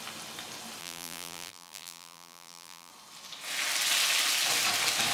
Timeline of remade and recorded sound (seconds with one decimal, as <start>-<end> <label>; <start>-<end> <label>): 0.0-0.8 recorded; 0.8-2.9 remade; 2.9-5.1 recorded